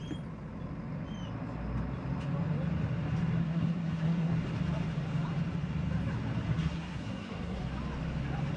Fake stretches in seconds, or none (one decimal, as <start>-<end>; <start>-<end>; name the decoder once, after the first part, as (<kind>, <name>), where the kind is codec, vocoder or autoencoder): 3.4-4.3 (codec, SNAC); 6.5-7.6